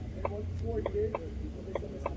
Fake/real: real